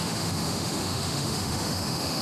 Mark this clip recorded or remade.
remade